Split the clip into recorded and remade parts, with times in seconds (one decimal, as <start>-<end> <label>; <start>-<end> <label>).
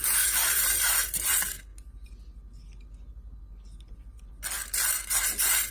0.0-1.7 remade; 1.7-5.1 recorded; 5.1-5.7 remade